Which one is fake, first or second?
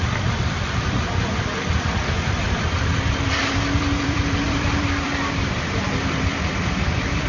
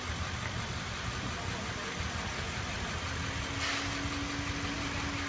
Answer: first